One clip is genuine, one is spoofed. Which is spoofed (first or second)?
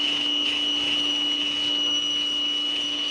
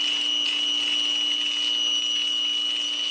first